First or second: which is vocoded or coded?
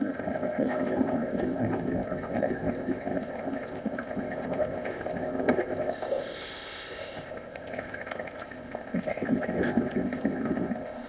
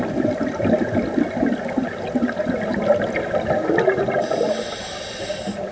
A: first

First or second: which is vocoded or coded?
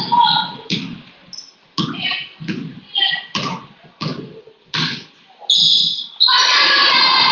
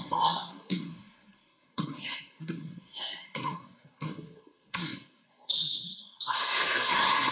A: second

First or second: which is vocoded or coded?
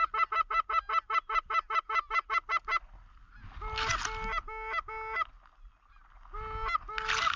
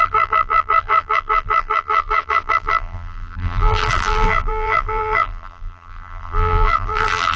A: second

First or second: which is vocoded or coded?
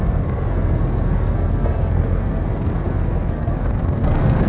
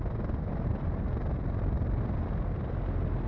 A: first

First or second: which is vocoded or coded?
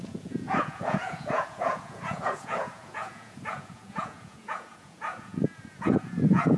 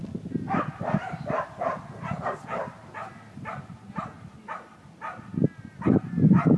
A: first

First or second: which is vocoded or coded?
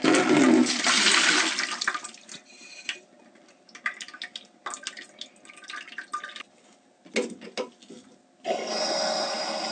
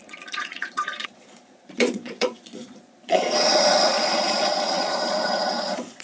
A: second